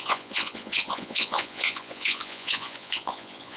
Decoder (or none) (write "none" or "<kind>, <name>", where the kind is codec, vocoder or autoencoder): vocoder, Vocos